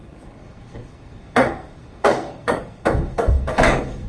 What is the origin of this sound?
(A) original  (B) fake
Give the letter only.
B